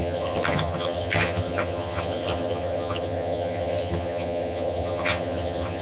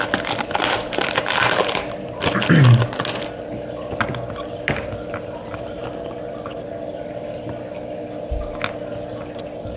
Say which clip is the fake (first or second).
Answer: first